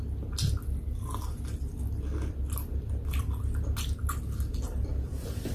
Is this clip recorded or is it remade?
recorded